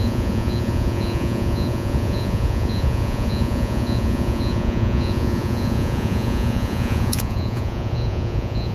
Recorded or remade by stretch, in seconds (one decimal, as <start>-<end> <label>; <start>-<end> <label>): 0.0-8.7 remade